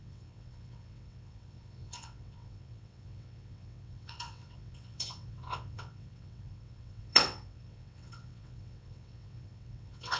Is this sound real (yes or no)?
no